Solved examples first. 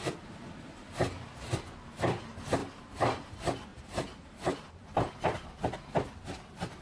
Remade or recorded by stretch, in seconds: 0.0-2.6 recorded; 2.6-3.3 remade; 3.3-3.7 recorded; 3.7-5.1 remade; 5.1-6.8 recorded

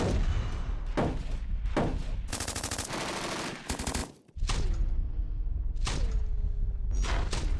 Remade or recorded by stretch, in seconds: 0.0-7.6 recorded

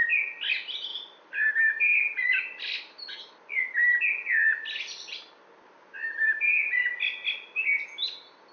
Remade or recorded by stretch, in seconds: 0.0-0.9 recorded; 0.9-1.5 remade; 1.5-8.5 recorded

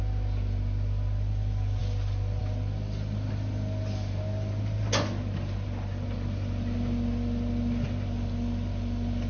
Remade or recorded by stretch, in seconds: 0.0-9.3 recorded